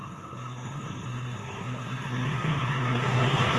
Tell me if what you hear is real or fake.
fake